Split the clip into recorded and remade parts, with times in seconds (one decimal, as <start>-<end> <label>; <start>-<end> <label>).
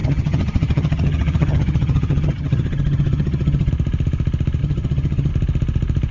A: 0.0-3.7 remade; 3.7-4.6 recorded; 4.6-5.3 remade; 5.3-6.1 recorded